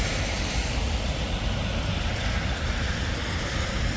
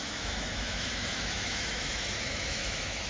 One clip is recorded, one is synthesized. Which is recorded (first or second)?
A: first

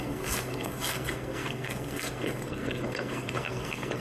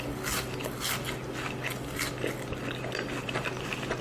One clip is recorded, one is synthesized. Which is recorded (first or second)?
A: second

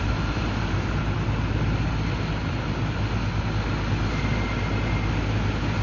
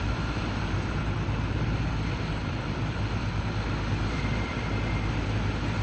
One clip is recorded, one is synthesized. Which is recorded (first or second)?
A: first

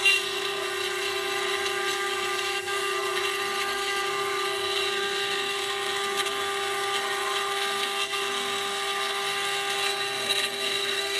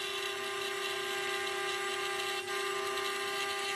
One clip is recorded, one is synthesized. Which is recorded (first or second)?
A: second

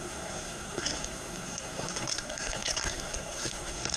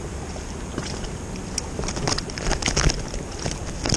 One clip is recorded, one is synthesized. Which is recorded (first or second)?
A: second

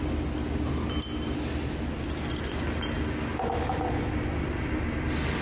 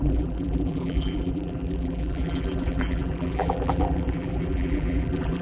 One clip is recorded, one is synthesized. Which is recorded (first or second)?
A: first